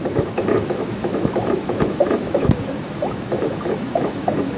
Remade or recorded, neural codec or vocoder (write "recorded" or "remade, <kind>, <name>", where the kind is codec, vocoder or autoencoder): remade, autoencoder, DAC-VAE